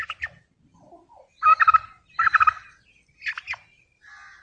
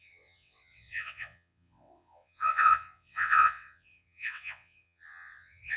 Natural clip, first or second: first